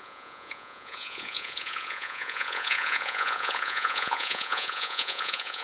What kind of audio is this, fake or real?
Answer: fake